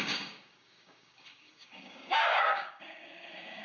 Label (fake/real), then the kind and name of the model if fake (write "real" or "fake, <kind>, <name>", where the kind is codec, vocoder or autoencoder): fake, codec, DAC